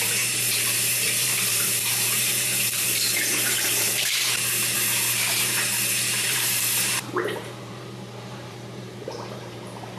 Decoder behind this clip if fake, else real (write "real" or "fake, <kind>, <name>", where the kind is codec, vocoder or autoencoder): fake, vocoder, BigVGAN v2